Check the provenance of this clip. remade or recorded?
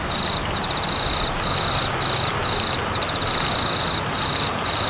recorded